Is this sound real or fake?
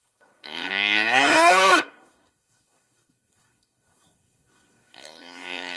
fake